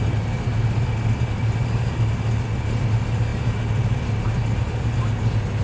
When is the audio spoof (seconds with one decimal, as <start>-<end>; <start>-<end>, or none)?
none